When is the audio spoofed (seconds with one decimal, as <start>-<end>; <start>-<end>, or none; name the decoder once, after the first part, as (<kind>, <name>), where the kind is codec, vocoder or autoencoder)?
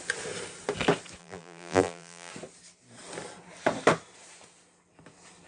1.2-2.3 (vocoder, BigVGAN v2)